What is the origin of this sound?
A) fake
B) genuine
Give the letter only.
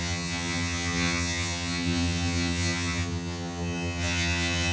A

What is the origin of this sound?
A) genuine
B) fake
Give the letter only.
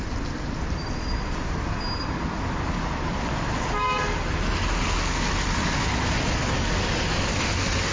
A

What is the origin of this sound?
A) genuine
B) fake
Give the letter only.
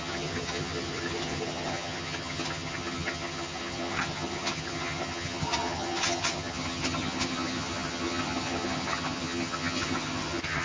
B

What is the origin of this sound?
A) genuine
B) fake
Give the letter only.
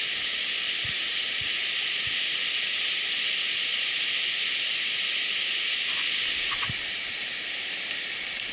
A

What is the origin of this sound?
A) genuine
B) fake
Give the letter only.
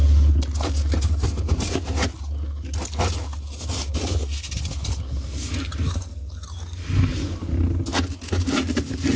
A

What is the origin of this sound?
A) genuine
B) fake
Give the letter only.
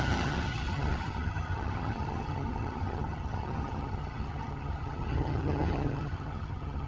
B